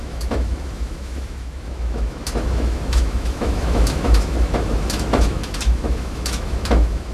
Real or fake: fake